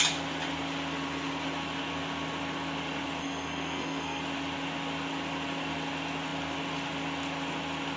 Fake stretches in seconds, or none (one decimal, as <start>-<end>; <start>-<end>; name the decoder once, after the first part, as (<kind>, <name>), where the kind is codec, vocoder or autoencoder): 3.2-4.2 (codec, SNAC)